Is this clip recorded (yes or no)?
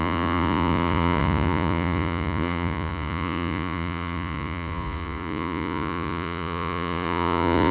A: no